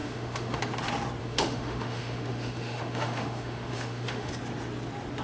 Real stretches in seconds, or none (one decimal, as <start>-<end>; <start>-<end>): 0.6-1.2; 4.3-5.2